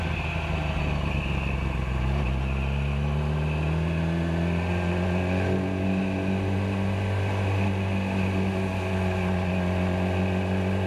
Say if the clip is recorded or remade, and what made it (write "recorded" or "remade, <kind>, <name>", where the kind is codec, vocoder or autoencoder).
recorded